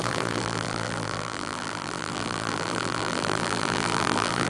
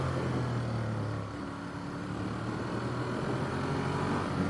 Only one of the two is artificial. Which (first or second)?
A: first